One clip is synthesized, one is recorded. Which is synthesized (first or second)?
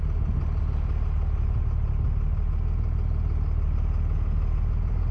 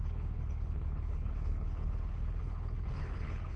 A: second